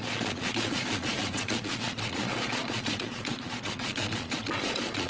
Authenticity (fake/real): fake